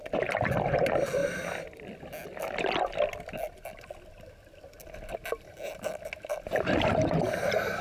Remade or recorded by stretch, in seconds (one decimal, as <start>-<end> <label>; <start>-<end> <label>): 0.0-7.8 recorded